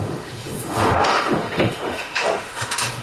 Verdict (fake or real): fake